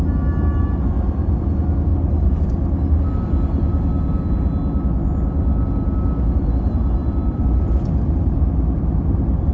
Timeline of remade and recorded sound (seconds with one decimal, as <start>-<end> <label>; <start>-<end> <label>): 0.0-7.0 recorded; 7.0-7.6 remade; 7.6-9.5 recorded